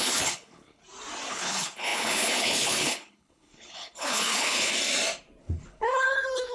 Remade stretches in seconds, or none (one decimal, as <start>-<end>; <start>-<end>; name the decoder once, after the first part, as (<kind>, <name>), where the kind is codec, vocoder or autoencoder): 0.0-0.8 (codec, HILCodec); 1.3-4.7; 5.4-6.5